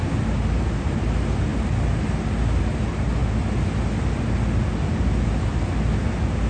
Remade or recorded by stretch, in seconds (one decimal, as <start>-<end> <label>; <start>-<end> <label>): 0.0-6.5 recorded